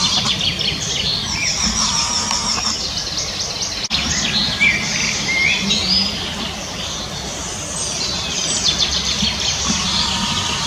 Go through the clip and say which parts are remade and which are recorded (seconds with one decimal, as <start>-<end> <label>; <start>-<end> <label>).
0.0-10.7 recorded